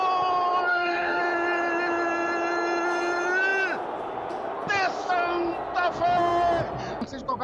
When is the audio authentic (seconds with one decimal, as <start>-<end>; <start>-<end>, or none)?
0.0-0.7; 1.2-7.4